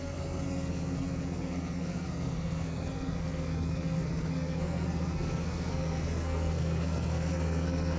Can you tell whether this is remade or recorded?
remade